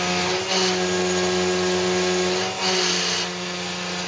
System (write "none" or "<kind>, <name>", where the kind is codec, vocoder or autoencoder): none